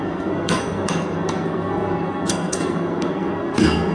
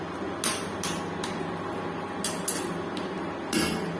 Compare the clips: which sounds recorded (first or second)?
second